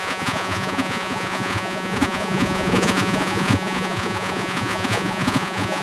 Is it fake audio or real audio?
fake